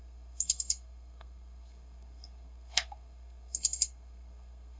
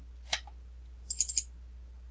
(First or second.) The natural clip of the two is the second